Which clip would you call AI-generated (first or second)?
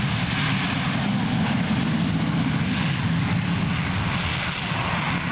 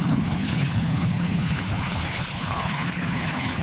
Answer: second